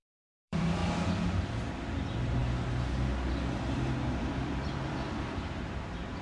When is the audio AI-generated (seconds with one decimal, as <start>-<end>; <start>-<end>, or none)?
0.0-2.4; 3.3-6.2